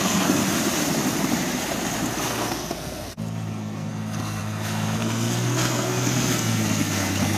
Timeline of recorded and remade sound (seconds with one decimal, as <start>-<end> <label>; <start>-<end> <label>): 0.0-0.4 remade; 0.4-2.3 recorded; 2.3-7.4 remade